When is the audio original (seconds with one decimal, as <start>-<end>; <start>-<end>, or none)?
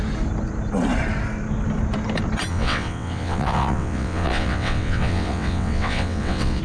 0.0-2.5